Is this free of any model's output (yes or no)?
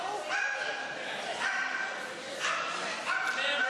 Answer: no